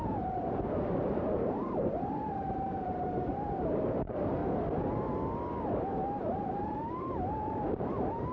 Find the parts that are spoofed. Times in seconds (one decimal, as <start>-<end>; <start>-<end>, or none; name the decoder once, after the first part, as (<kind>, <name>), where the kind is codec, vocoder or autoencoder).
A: 0.0-4.4 (vocoder, BigVGAN v2); 6.5-8.3